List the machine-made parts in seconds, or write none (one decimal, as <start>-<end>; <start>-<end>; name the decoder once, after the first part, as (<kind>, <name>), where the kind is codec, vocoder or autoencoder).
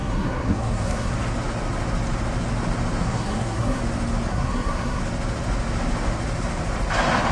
0.0-1.1 (codec, SNAC); 3.0-3.8; 4.3-5.0